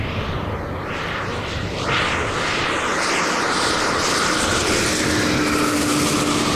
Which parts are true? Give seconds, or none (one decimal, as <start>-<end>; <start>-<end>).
0.0-6.6